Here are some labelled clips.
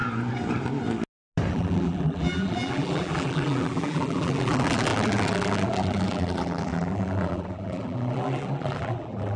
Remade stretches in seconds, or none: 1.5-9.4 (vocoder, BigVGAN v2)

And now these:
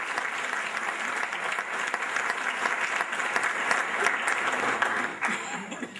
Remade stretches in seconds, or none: none

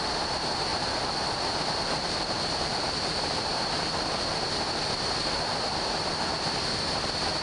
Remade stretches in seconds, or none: 0.7-3.4 (vocoder, BigVGAN v2)

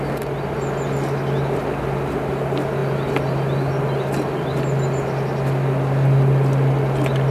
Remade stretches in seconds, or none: none

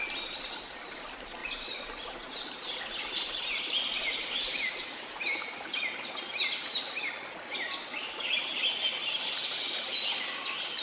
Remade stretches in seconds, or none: 1.4-2.7 (vocoder, BigVGAN v2)

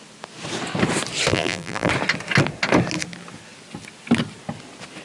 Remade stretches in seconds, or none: 1.3-1.9 (vocoder, BigVGAN v2)

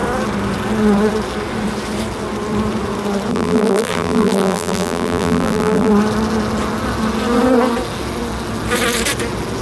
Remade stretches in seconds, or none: 3.3-5.9 (vocoder, BigVGAN v2)

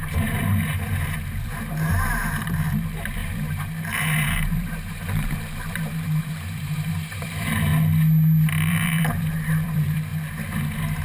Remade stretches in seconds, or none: 0.0-7.7 (vocoder, BigVGAN v2); 8.7-10.1